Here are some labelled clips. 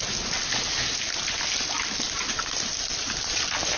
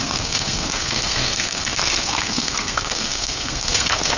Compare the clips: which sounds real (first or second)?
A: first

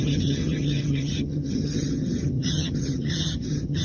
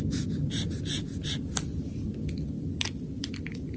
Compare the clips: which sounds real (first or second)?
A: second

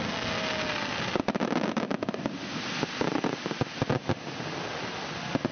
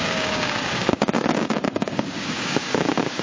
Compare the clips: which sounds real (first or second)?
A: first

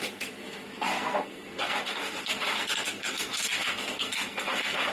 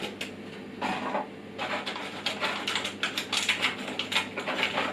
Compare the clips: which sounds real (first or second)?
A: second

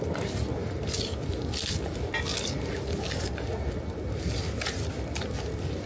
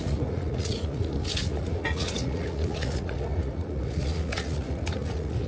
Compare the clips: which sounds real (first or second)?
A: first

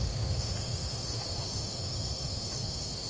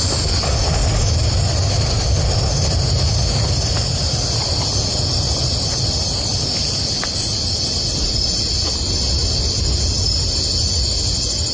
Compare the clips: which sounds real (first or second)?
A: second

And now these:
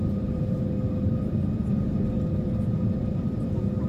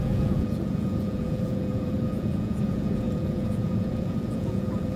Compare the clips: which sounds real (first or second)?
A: first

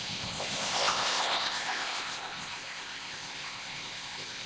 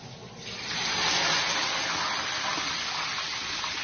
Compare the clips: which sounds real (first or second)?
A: second